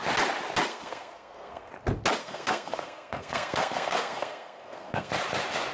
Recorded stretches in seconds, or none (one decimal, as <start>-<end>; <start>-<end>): 0.0-0.7; 1.7-2.2; 5.1-5.7